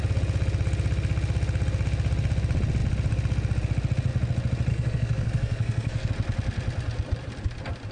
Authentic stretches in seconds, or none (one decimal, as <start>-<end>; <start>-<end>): 0.0-4.7; 6.1-7.9